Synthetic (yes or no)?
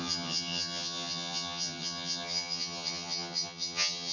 yes